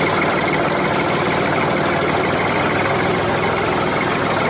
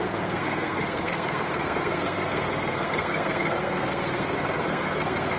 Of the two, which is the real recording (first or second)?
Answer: first